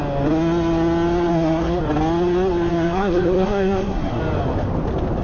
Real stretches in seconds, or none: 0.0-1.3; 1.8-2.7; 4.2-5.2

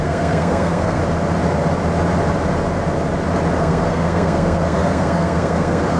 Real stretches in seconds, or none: 1.0-3.6

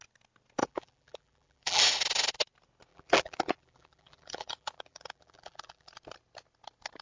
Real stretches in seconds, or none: 0.0-0.6; 1.8-2.9; 5.9-7.0

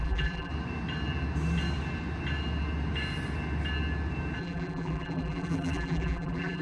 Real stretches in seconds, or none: 0.5-4.4

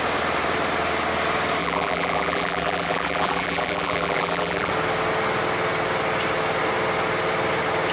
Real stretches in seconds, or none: 0.0-1.6; 4.7-7.9